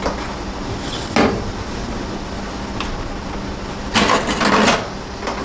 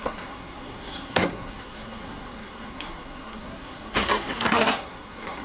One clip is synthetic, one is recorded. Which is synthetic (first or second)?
second